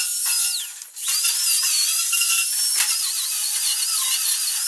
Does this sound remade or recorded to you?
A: recorded